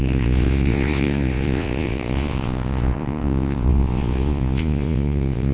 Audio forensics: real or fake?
fake